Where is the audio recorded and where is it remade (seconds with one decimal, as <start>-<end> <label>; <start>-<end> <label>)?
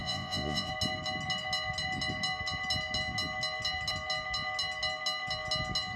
0.0-0.7 remade; 0.7-6.0 recorded